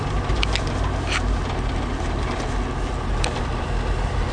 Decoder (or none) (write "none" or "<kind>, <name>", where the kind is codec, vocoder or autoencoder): none